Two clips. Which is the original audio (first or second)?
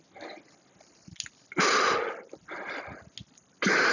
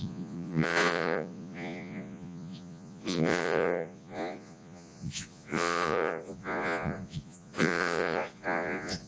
first